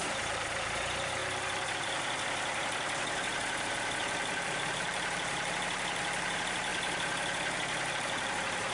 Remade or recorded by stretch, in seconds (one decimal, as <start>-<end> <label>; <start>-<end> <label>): 0.0-1.2 remade; 1.2-1.8 recorded; 1.8-6.7 remade; 6.7-7.9 recorded; 7.9-8.7 remade